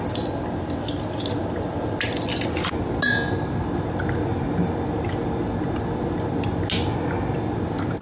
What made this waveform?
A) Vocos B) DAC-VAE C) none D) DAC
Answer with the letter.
C